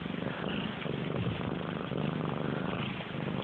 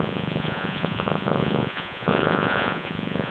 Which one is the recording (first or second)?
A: first